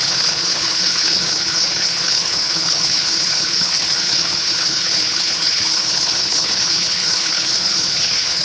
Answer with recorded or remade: remade